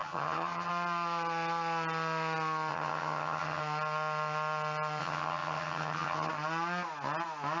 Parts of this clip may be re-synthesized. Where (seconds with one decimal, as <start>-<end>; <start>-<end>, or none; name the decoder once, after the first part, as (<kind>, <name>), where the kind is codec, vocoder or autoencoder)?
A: 0.0-0.7 (vocoder, HiFi-GAN); 2.7-3.6; 5.0-6.3